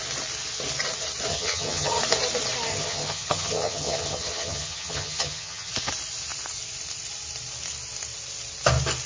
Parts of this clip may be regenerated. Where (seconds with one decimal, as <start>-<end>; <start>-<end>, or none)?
1.3-2.0; 2.7-5.7